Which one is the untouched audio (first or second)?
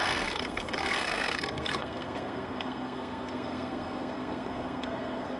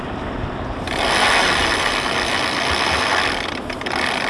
second